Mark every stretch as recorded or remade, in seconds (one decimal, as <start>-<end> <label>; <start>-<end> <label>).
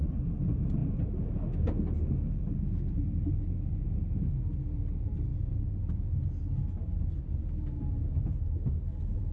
0.0-9.3 recorded